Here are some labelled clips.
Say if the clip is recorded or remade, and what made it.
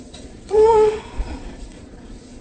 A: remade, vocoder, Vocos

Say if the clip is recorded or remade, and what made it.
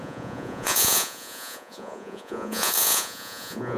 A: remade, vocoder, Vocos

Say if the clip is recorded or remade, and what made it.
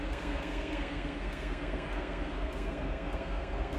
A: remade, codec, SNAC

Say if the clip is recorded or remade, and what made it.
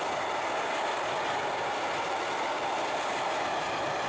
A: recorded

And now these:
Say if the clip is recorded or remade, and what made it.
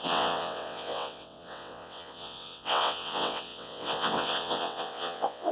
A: remade, vocoder, WaveNeXt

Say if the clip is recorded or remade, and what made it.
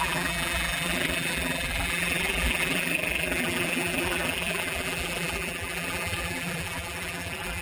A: remade, vocoder, BigVGAN v2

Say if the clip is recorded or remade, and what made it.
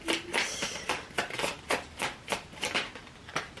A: recorded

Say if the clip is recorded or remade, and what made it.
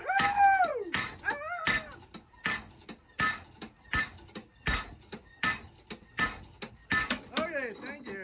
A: recorded